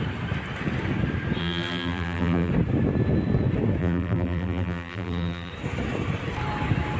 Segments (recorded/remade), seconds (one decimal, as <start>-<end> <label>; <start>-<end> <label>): 0.0-1.4 recorded; 1.4-2.5 remade; 2.5-3.8 recorded; 3.8-5.5 remade; 5.5-7.0 recorded